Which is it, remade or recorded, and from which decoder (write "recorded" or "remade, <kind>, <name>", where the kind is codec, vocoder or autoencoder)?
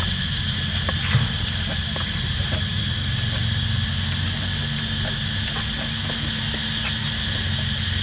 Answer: recorded